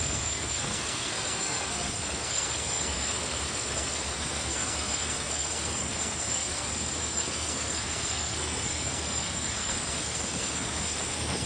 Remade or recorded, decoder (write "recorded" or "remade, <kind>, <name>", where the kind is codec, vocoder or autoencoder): remade, codec, SNAC